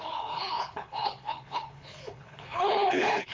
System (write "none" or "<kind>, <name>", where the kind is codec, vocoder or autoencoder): codec, HILCodec